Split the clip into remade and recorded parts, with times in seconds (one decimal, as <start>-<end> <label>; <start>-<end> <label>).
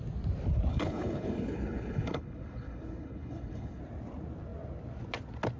0.0-0.7 recorded; 0.7-3.8 remade; 3.8-5.6 recorded